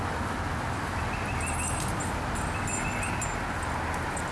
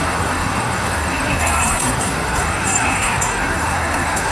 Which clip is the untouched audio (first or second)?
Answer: first